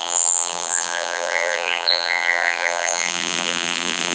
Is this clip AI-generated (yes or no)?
yes